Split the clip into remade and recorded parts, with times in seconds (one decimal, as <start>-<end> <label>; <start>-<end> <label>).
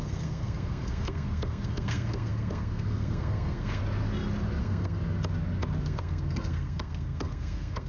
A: 0.0-3.8 remade; 3.8-4.6 recorded; 4.6-5.0 remade; 5.0-5.8 recorded; 5.8-7.9 remade